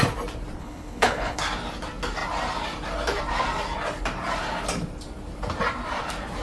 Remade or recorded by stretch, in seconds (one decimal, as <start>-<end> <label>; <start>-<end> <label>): 0.0-0.6 recorded; 0.6-1.4 remade; 1.4-6.4 recorded